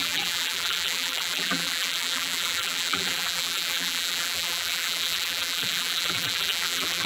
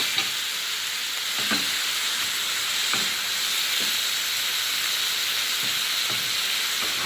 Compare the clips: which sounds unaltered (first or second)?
second